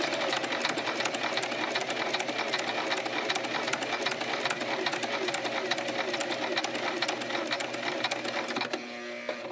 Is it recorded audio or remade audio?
recorded